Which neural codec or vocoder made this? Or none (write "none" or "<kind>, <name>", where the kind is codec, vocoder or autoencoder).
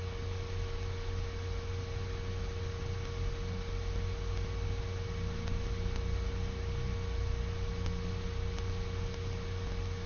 none